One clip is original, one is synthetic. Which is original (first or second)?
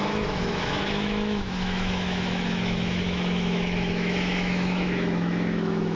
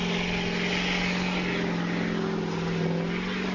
second